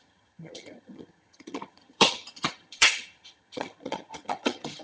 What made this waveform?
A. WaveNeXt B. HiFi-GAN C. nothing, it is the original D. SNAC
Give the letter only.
B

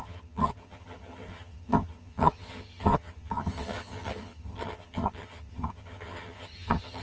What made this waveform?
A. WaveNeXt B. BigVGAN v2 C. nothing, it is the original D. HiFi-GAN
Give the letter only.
D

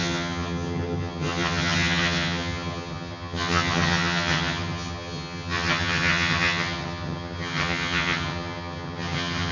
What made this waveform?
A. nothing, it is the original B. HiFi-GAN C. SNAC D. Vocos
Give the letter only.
B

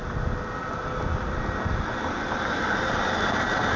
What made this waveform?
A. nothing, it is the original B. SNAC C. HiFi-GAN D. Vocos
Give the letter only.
A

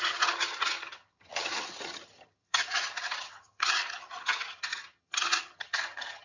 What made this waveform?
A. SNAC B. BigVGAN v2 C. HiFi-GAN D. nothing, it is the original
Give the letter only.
C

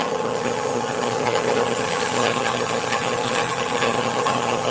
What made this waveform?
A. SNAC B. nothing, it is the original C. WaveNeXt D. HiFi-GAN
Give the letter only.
D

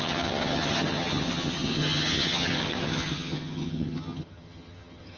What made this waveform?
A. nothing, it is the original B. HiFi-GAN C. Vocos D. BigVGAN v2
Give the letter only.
B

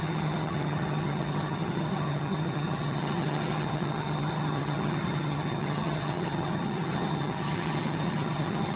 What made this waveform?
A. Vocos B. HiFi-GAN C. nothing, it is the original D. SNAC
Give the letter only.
B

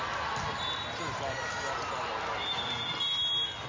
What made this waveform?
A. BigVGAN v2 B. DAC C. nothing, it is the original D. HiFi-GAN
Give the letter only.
C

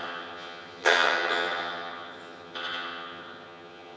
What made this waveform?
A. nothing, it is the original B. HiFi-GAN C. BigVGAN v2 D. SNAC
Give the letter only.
B